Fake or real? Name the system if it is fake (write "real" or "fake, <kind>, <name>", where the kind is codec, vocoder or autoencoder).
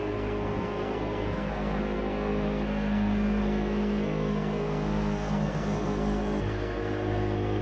fake, codec, SNAC